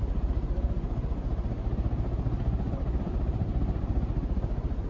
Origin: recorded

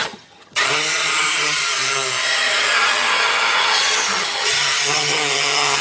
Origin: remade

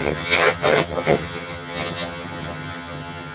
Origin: remade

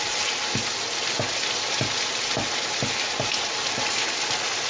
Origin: recorded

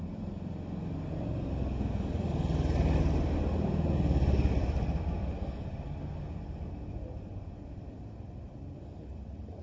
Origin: recorded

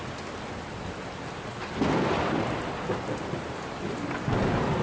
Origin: recorded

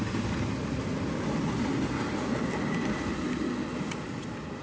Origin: recorded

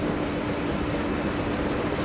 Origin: recorded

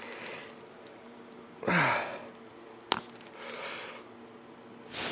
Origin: recorded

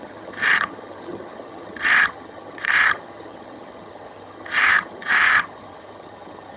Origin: remade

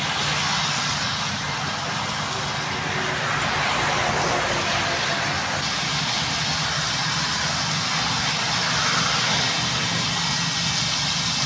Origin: recorded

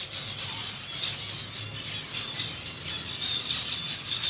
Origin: recorded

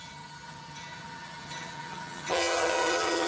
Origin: remade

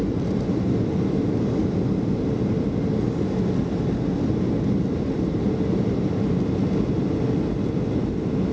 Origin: recorded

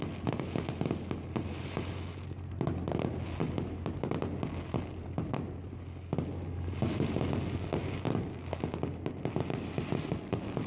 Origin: recorded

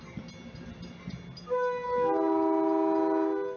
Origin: recorded